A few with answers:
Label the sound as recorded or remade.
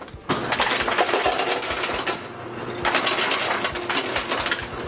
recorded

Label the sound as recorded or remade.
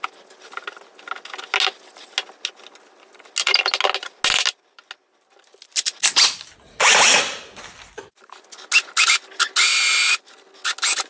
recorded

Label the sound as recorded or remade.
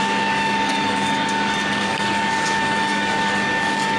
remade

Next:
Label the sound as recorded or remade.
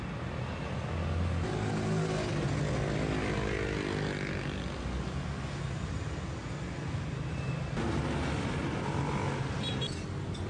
recorded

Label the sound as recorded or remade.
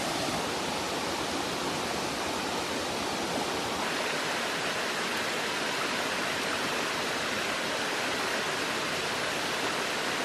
recorded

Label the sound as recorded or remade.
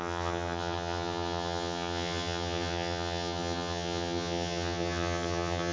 remade